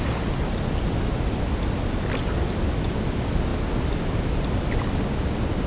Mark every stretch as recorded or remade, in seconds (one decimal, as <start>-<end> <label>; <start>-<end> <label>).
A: 0.0-5.7 recorded